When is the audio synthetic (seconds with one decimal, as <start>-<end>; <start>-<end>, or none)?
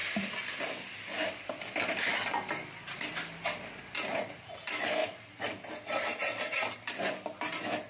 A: none